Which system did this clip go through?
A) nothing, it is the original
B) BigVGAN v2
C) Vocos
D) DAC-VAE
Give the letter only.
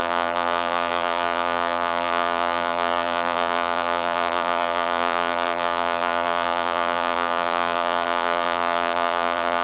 B